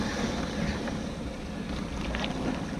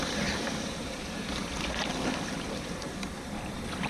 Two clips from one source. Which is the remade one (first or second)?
second